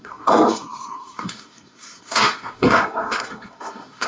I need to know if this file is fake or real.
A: fake